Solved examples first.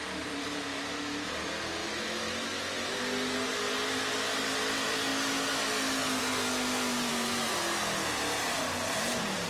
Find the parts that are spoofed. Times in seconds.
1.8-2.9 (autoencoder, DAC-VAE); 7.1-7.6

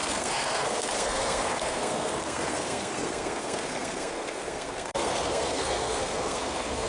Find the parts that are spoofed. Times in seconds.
0.0-6.9 (codec, SNAC)

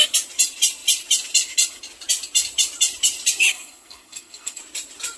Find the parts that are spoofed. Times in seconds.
3.5-4.6 (codec, SNAC)